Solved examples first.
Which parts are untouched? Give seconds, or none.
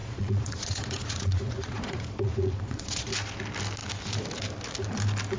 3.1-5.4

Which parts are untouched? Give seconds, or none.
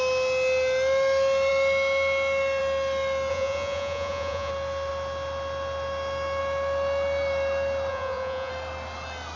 0.0-3.3; 4.5-7.9; 8.5-9.4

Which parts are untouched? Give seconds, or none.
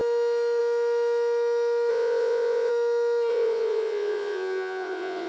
0.0-1.9; 2.7-3.3